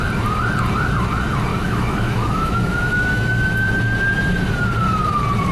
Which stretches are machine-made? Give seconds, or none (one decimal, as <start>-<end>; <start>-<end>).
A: 1.5-3.7